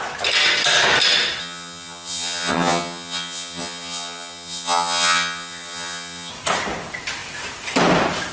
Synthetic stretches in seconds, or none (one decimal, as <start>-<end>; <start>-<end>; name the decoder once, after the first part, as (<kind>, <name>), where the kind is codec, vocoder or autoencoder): 1.4-6.3 (vocoder, HiFi-GAN)